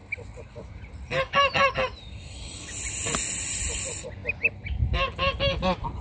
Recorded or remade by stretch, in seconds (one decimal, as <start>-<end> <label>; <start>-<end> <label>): 0.0-6.0 recorded